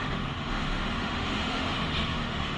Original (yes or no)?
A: no